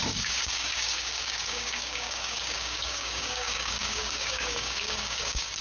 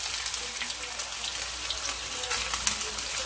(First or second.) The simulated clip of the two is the first